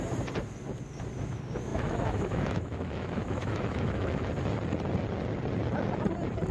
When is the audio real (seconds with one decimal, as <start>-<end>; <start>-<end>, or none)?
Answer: 0.0-1.7; 4.3-6.5